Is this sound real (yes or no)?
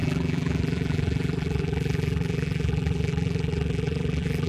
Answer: no